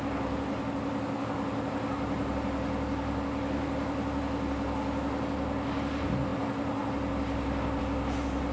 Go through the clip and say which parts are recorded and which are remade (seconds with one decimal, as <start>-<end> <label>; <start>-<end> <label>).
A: 0.0-8.5 recorded